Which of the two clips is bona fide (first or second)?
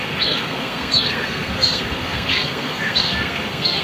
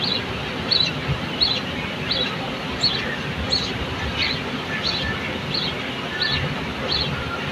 second